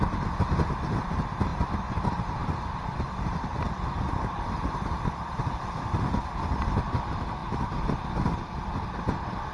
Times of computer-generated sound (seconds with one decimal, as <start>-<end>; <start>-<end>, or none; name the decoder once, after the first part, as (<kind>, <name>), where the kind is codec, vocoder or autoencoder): none